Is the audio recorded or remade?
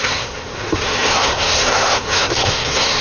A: remade